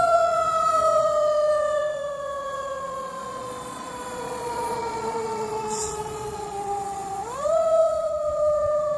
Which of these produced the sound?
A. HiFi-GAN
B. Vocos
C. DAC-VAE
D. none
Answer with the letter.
B